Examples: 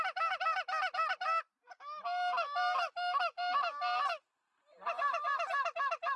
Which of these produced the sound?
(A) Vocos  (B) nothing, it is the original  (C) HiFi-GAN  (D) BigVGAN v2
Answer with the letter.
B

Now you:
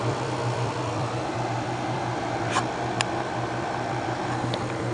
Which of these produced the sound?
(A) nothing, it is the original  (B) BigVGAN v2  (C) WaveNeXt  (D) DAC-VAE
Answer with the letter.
B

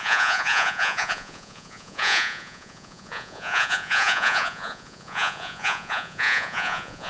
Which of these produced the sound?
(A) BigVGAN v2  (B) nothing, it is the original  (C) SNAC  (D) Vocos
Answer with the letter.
D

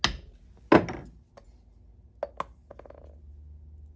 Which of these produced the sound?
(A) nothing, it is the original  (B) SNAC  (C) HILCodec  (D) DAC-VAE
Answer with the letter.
A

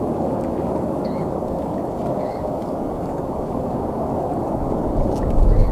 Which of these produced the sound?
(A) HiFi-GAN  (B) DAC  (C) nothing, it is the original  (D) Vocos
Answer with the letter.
B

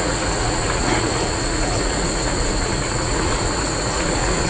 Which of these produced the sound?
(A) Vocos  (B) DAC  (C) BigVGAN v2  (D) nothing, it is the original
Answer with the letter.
A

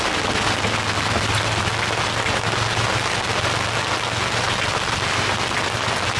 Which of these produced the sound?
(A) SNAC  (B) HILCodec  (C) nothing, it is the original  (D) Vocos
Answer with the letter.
C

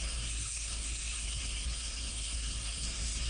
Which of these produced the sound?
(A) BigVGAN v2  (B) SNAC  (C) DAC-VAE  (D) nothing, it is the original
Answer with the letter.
B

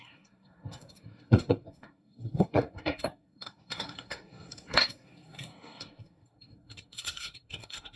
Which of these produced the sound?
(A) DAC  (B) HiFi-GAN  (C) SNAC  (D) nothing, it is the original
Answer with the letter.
C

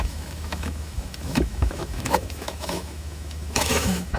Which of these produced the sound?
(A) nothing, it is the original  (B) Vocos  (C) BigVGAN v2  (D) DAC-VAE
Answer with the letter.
D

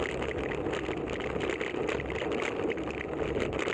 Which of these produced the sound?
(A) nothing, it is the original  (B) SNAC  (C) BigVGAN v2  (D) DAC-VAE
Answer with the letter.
A